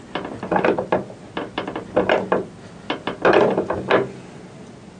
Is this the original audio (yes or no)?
yes